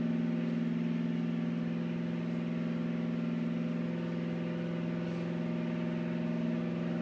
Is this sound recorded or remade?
recorded